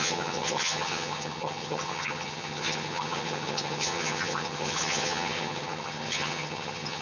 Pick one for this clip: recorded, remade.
remade